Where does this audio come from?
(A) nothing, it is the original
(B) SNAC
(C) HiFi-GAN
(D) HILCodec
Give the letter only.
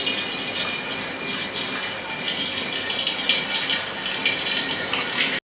A